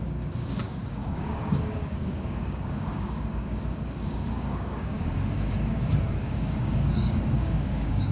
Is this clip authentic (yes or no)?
no